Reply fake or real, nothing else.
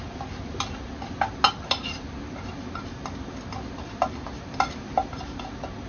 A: real